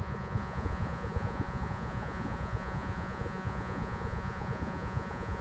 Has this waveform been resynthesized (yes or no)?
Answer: yes